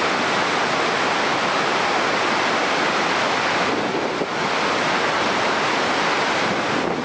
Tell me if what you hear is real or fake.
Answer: real